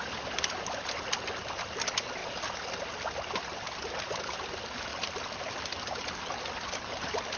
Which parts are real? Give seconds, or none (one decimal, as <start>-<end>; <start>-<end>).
0.0-7.4